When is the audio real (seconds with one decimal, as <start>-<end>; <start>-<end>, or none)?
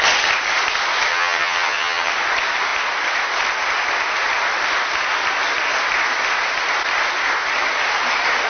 0.0-1.1; 2.1-8.5